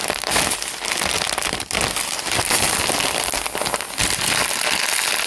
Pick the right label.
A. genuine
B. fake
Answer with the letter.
A